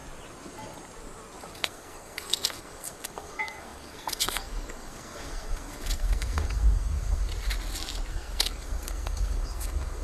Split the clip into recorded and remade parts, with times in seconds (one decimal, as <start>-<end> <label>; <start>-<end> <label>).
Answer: 0.0-1.6 recorded; 1.6-7.3 remade; 7.3-8.1 recorded; 8.1-10.0 remade

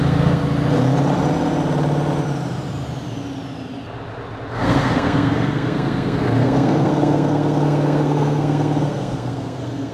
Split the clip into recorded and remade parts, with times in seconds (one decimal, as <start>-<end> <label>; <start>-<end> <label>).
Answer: 0.0-0.4 remade; 0.4-4.5 recorded; 4.5-9.9 remade

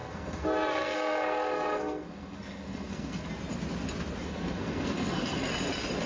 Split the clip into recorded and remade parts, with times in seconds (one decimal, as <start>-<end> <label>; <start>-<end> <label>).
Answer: 0.0-3.3 remade; 3.3-4.2 recorded; 4.2-5.5 remade; 5.5-6.1 recorded

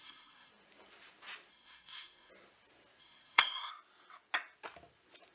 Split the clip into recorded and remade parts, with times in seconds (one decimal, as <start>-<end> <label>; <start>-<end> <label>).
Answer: 0.0-0.5 remade; 0.5-1.5 recorded; 1.5-2.3 remade; 2.3-3.0 recorded; 3.0-3.7 remade; 3.7-5.3 recorded

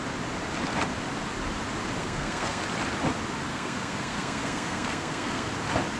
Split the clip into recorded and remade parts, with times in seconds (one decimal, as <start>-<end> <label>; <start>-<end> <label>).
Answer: 0.0-2.0 recorded; 2.0-2.6 remade; 2.6-3.5 recorded; 3.5-5.5 remade; 5.5-6.0 recorded

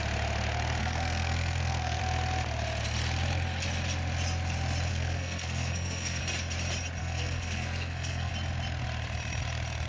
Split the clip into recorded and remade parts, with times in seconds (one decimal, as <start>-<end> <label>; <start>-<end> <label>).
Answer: 0.0-0.8 recorded; 0.8-2.0 remade; 2.0-4.9 recorded; 4.9-6.2 remade; 6.2-7.0 recorded; 7.0-8.3 remade; 8.3-9.9 recorded

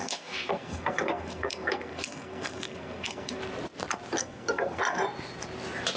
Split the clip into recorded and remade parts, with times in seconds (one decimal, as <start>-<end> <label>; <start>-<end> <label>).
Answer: 0.0-3.4 remade; 3.4-4.2 recorded; 4.2-4.8 remade; 4.8-6.0 recorded